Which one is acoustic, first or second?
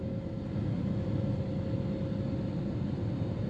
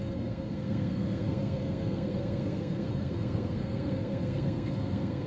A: first